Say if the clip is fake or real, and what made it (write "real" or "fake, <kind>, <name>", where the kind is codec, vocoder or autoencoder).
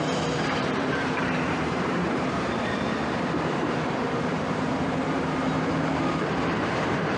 fake, vocoder, BigVGAN v2